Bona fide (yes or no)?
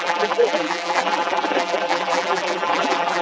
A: no